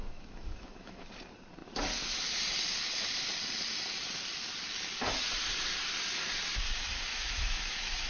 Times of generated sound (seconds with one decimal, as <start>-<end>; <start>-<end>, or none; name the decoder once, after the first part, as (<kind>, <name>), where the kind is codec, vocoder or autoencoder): 0.0-1.1 (autoencoder, DAC-VAE); 7.1-8.1